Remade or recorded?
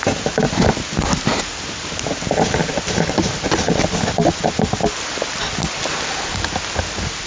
recorded